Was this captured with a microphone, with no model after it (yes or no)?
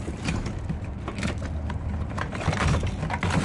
yes